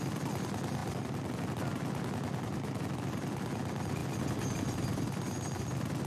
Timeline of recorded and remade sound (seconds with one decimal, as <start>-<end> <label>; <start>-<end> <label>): 0.0-6.1 recorded